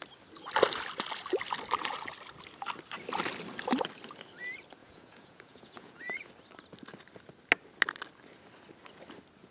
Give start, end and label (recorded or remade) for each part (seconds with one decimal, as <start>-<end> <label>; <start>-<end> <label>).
0.0-4.8 recorded; 4.8-6.3 remade; 6.3-9.5 recorded